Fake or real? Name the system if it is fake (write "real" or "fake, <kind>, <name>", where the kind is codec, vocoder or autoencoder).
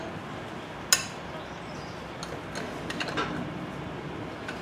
real